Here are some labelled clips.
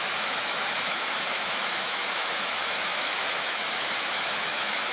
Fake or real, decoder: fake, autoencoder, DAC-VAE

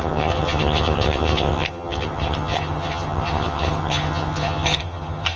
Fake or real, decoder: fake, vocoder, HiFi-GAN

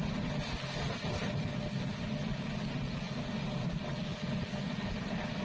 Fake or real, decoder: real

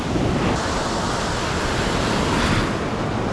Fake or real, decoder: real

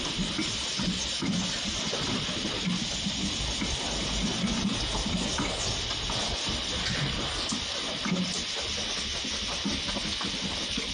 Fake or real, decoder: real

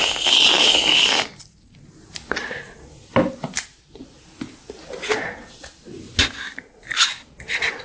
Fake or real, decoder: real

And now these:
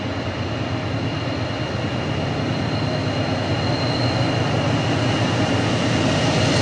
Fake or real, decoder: real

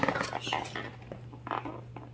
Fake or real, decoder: real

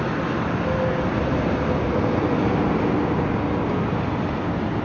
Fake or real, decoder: real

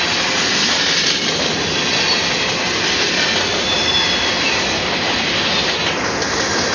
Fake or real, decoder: real